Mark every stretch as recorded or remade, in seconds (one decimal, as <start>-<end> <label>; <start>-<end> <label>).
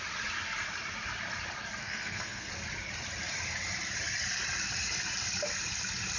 0.0-1.8 recorded; 1.8-2.5 remade; 2.5-6.2 recorded